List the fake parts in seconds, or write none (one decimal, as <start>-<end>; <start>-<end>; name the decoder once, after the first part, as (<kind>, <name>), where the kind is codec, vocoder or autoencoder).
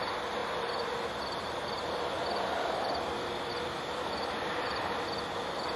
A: none